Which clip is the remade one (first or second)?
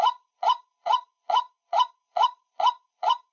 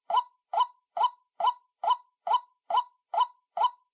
first